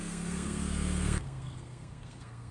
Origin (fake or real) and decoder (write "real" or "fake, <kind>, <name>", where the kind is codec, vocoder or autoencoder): fake, codec, SNAC